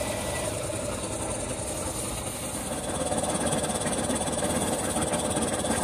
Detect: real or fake real